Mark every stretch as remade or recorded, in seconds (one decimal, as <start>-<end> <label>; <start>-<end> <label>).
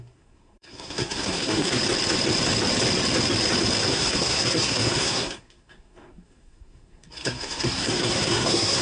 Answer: 0.0-1.8 remade; 1.8-3.9 recorded; 3.9-8.8 remade